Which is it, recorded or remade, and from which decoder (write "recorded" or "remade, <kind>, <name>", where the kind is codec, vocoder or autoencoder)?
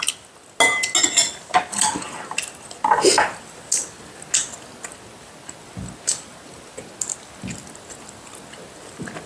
recorded